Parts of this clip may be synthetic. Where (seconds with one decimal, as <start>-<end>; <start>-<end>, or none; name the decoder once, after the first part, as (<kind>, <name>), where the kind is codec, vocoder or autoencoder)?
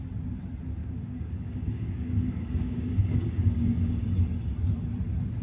0.8-4.0 (codec, DAC)